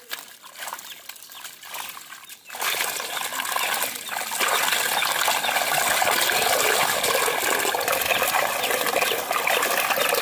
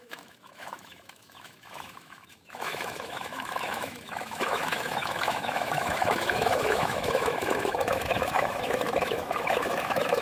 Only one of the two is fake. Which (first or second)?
second